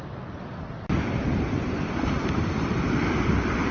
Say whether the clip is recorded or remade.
recorded